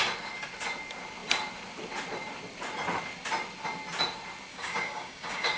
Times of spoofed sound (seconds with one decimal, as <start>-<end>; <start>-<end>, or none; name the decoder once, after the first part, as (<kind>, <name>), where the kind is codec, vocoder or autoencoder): 4.5-5.6 (codec, DAC)